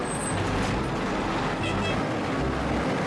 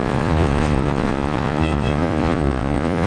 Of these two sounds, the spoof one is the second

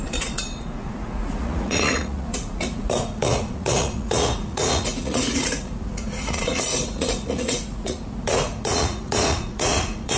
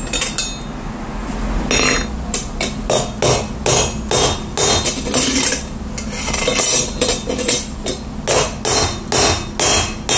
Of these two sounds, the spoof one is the first